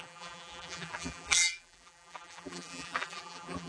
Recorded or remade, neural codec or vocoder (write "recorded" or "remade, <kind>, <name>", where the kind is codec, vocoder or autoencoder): remade, vocoder, BigVGAN v2